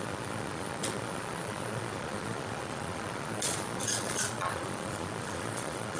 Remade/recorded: remade